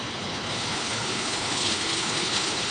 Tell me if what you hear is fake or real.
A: fake